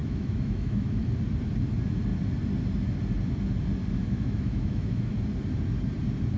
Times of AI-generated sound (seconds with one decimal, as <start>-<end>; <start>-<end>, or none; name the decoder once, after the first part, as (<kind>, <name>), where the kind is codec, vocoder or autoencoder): 0.0-1.0 (autoencoder, DAC-VAE); 4.0-5.1